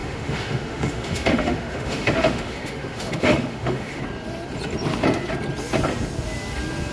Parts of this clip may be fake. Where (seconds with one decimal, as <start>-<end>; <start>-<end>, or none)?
0.0-4.0